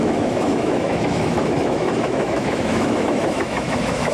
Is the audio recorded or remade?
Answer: remade